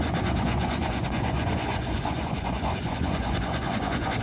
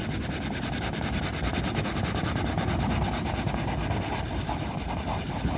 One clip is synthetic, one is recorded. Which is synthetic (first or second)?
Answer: first